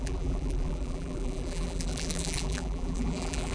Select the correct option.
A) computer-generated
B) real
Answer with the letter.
A